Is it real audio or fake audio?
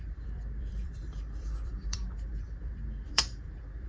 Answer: fake